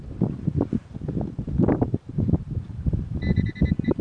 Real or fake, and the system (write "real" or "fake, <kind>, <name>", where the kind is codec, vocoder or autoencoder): fake, vocoder, BigVGAN v2